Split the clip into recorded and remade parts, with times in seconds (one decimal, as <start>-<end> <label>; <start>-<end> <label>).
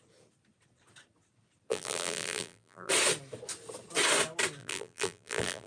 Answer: 0.0-1.7 recorded; 1.7-2.9 remade; 2.9-4.6 recorded; 4.6-5.7 remade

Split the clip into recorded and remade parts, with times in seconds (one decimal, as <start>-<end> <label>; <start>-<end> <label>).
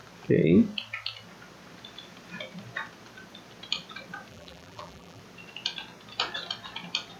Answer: 0.0-4.3 recorded; 4.3-5.2 remade; 5.2-7.2 recorded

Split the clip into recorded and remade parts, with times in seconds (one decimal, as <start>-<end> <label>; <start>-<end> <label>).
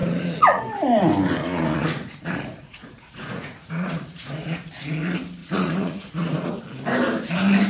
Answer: 0.0-0.6 remade; 0.6-1.4 recorded; 1.4-4.7 remade; 4.7-5.4 recorded; 5.4-6.5 remade; 6.5-7.7 recorded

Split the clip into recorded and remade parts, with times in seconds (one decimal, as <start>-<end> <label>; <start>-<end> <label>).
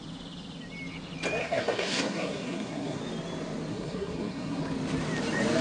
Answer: 0.0-1.4 recorded; 1.4-3.0 remade; 3.0-3.7 recorded; 3.7-4.6 remade; 4.6-5.6 recorded